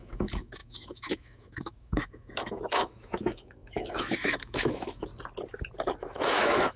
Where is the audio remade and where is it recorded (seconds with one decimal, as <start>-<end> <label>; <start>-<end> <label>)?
0.0-5.1 remade; 5.1-6.0 recorded; 6.0-6.8 remade